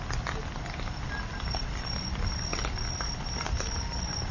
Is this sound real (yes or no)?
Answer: yes